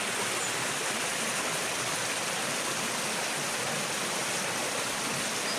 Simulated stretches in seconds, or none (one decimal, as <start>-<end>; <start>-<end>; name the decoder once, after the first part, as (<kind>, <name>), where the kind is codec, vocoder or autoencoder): none